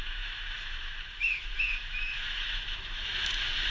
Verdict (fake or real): fake